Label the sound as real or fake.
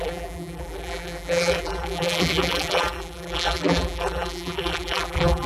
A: fake